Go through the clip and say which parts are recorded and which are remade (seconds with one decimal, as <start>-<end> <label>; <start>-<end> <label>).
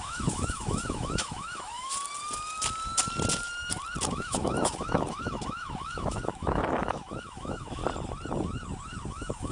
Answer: 0.0-1.9 remade; 1.9-4.1 recorded; 4.1-7.8 remade; 7.8-9.1 recorded; 9.1-9.5 remade